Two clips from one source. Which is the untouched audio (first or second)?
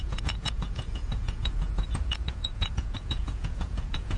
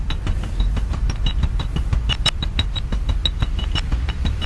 second